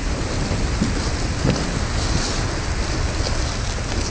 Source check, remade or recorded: recorded